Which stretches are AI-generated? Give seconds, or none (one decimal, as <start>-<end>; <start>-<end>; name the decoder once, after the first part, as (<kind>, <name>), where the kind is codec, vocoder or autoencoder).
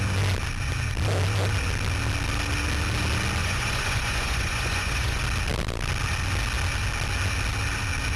3.4-5.2 (vocoder, Vocos)